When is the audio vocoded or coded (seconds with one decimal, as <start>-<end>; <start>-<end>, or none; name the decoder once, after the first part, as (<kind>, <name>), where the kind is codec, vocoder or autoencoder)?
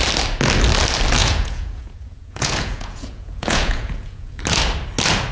1.2-4.4 (vocoder, Vocos)